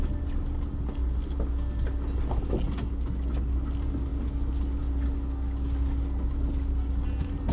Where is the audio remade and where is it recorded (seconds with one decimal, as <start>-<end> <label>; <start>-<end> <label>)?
0.0-7.5 recorded